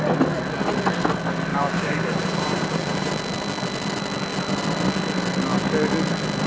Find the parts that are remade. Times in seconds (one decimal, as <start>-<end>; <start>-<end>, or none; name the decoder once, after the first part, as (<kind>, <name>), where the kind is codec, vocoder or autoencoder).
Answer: 1.5-3.1 (vocoder, BigVGAN v2)